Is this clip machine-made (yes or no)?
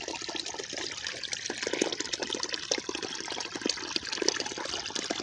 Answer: no